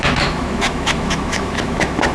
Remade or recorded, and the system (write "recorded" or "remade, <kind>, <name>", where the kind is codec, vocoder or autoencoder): remade, autoencoder, DAC-VAE